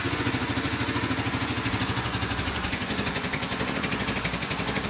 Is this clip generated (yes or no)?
yes